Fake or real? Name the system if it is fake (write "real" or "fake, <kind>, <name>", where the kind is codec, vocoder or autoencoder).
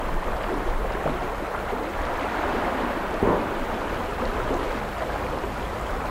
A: real